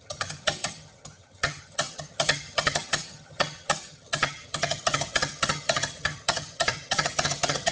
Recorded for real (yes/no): no